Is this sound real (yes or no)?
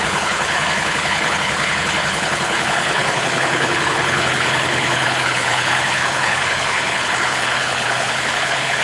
no